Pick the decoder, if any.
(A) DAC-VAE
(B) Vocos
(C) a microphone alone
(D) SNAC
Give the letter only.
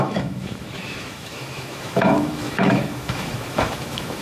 A